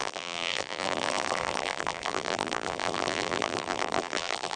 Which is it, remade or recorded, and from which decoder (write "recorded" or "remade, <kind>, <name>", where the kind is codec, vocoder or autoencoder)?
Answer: remade, vocoder, BigVGAN v2